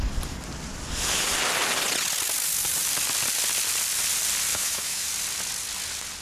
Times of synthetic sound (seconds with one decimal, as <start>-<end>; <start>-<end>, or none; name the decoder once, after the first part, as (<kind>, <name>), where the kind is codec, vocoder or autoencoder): 4.5-5.1 (autoencoder, DAC-VAE)